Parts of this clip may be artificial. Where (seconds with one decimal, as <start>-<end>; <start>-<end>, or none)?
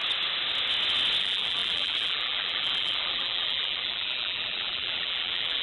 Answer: 1.2-5.6